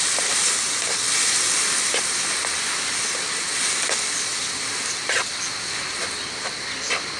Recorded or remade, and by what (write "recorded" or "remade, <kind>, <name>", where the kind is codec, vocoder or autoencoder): recorded